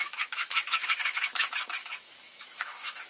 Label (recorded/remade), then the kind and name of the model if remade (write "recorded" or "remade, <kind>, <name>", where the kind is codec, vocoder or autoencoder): remade, autoencoder, DAC-VAE